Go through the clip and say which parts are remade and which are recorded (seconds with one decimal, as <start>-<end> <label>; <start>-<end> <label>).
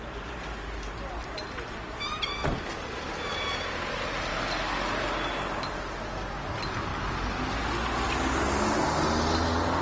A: 0.0-9.8 recorded